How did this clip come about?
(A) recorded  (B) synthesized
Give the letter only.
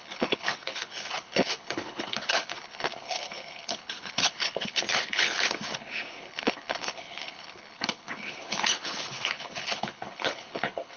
B